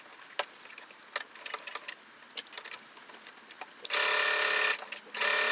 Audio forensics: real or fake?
real